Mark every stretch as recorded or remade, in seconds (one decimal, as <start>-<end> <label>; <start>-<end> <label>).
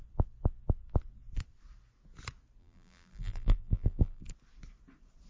0.0-2.6 recorded; 2.6-4.2 remade; 4.2-5.3 recorded